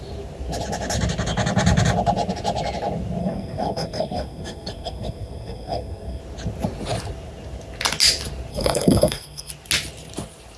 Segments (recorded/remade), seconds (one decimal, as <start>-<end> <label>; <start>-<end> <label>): 0.0-3.2 recorded; 3.2-6.2 remade; 6.2-8.5 recorded; 8.5-9.5 remade; 9.5-10.6 recorded